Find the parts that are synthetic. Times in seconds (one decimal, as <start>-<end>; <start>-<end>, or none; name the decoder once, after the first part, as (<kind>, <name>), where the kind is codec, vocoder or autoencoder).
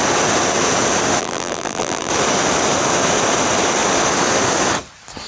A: 1.2-2.1 (vocoder, BigVGAN v2)